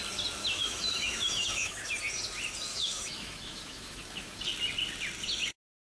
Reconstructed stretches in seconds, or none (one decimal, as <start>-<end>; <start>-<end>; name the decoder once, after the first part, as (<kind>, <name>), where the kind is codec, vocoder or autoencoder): 0.4-1.9 (autoencoder, DAC-VAE); 2.7-4.4